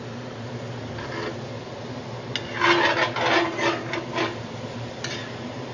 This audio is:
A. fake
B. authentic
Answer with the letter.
B